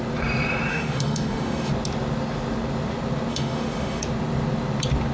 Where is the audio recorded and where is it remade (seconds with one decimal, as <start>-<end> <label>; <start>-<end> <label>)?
0.0-0.7 recorded; 0.7-1.7 remade; 1.7-3.3 recorded; 3.3-4.0 remade; 4.0-5.1 recorded